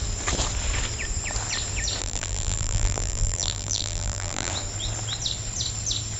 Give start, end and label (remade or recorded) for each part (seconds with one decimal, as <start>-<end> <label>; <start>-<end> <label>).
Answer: 0.0-2.0 recorded; 2.0-4.5 remade; 4.5-6.2 recorded